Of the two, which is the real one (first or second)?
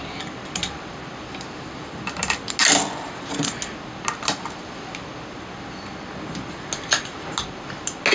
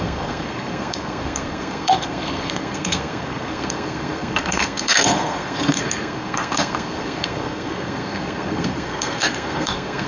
first